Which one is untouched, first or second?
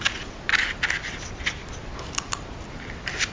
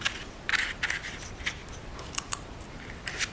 first